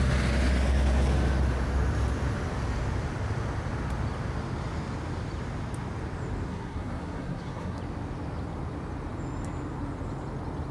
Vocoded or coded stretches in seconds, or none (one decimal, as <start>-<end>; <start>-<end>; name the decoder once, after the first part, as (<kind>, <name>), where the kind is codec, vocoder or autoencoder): 6.5-7.8 (codec, SNAC)